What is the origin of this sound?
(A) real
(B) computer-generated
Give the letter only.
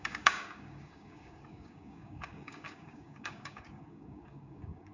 B